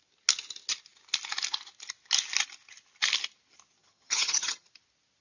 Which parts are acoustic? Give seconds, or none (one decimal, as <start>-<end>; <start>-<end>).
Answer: 0.0-3.8; 4.7-5.2